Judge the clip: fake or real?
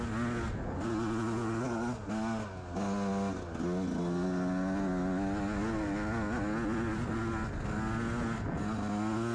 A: real